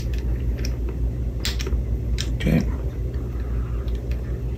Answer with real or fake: real